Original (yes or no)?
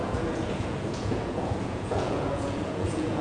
no